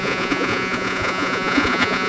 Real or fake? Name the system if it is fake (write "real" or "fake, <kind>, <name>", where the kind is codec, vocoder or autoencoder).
fake, vocoder, Vocos